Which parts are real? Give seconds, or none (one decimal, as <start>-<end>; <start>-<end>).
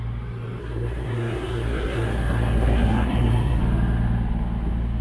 0.0-0.6; 3.6-5.0